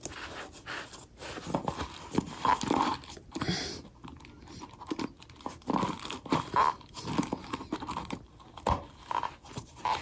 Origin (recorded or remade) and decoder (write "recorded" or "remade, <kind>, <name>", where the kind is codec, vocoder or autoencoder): recorded